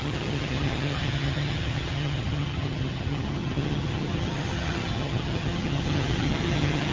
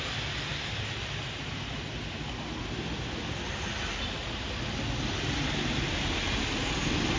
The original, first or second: second